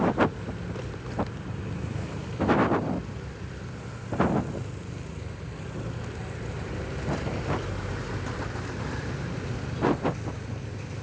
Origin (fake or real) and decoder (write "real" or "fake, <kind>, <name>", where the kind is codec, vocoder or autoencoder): real